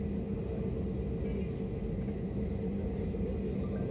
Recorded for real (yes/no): yes